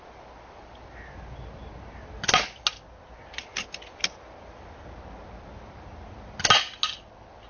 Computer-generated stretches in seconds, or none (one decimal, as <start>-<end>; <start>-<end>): none